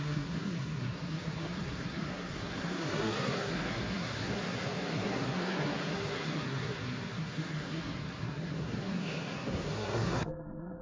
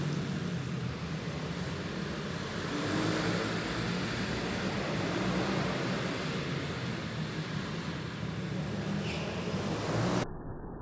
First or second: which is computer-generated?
first